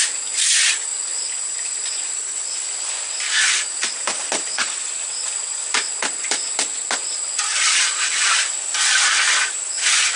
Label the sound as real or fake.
real